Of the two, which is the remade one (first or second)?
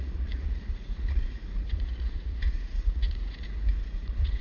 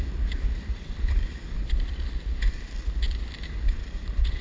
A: first